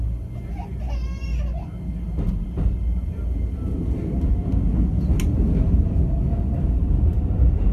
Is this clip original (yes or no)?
yes